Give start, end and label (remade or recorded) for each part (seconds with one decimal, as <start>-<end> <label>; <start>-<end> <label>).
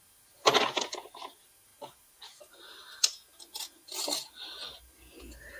0.0-5.6 recorded